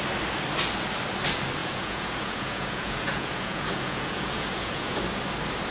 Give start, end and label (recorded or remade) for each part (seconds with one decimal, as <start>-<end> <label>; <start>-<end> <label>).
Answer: 0.0-1.6 recorded; 1.6-5.0 remade; 5.0-5.7 recorded